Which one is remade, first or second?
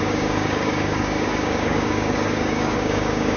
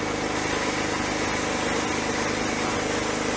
first